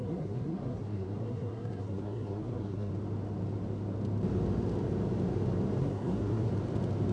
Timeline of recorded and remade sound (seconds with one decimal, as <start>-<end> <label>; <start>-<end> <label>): 0.0-2.9 remade; 2.9-5.8 recorded; 5.8-6.5 remade; 6.5-7.1 recorded